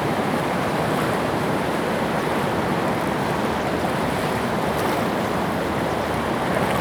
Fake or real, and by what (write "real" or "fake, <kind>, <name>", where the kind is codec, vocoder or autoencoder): fake, vocoder, BigVGAN v2